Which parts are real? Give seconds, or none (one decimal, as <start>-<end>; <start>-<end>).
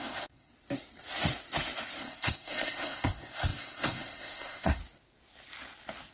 0.5-2.0; 4.8-6.1